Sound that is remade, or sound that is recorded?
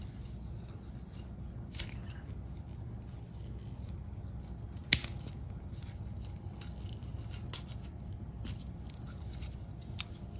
recorded